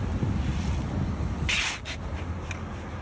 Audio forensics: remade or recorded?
recorded